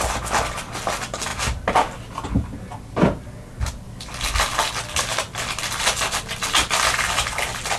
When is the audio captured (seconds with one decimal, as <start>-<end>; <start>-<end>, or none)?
0.0-7.8